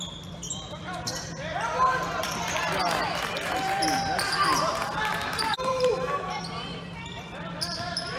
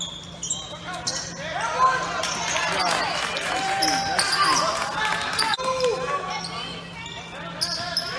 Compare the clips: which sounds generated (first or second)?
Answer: first